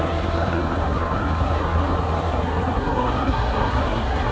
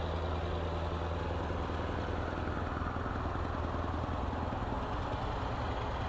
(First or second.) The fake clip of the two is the first